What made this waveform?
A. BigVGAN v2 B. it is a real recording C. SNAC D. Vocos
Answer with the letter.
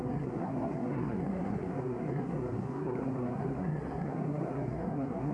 C